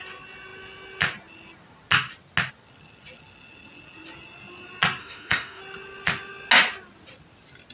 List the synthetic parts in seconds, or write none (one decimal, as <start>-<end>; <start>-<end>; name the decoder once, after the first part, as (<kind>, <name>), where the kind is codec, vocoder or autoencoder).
5.0-5.6 (autoencoder, DAC-VAE)